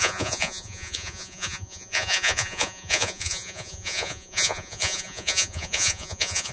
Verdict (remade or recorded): remade